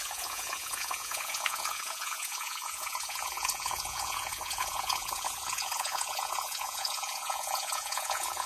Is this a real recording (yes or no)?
no